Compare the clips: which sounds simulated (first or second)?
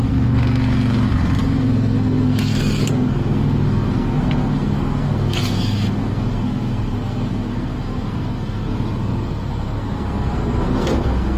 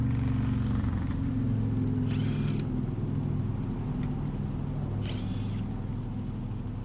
first